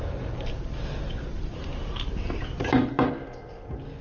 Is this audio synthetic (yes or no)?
no